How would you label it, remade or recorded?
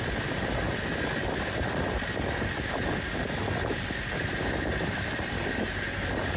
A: recorded